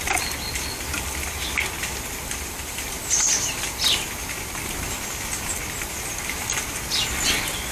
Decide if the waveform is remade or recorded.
recorded